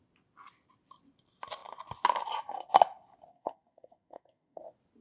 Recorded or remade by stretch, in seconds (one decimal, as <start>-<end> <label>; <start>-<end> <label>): 0.0-3.3 recorded; 3.3-4.6 remade; 4.6-5.0 recorded